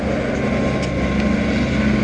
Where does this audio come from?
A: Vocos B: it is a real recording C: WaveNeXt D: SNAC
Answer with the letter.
B